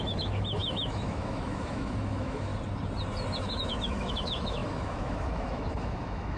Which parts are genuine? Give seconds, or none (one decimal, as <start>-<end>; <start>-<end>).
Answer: 2.5-3.4